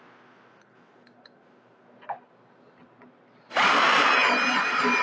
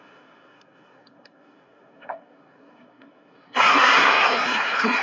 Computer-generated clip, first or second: second